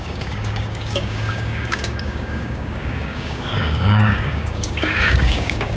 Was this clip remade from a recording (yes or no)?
yes